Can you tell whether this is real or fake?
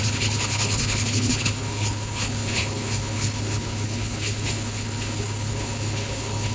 fake